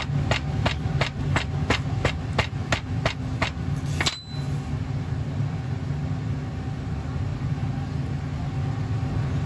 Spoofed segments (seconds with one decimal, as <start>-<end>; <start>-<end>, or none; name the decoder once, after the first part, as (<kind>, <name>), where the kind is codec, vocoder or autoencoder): none